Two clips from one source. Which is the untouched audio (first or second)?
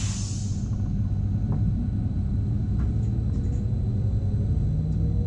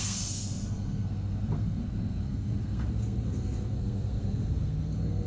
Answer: first